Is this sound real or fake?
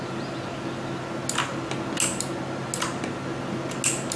real